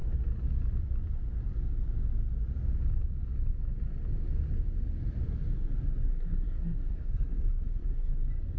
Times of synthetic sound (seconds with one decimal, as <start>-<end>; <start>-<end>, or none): 6.1-8.1